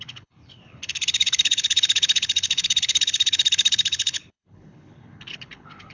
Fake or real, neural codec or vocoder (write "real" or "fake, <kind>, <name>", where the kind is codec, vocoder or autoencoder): fake, codec, HILCodec